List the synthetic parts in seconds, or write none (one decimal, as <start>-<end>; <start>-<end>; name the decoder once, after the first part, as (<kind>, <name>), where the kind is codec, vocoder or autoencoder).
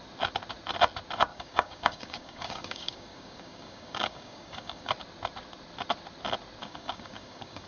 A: 1.3-4.9 (codec, DAC); 6.6-7.7